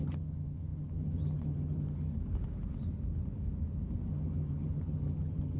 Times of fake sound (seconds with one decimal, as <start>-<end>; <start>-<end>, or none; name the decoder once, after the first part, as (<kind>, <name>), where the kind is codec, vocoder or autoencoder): 0.0-2.1 (vocoder, HiFi-GAN); 4.1-5.6